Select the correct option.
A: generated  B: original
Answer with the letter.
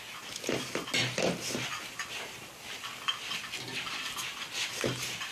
B